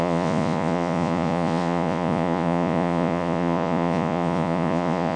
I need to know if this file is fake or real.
fake